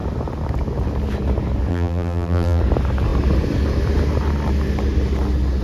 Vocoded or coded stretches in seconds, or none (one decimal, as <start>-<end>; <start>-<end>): 1.7-2.6